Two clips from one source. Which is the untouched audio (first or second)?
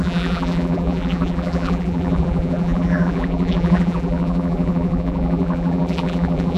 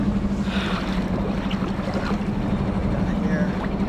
second